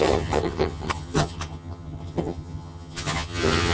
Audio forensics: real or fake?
fake